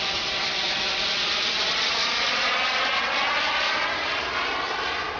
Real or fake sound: real